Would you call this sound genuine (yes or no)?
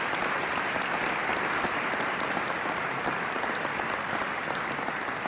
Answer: yes